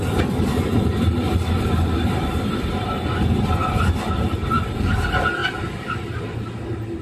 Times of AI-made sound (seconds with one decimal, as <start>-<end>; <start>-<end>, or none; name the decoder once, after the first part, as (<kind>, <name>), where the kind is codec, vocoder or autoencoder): none